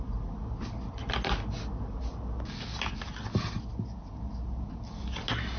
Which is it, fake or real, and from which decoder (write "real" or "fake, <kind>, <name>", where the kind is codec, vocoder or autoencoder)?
real